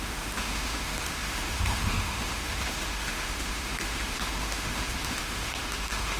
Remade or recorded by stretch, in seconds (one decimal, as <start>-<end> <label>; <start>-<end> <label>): 0.0-6.2 remade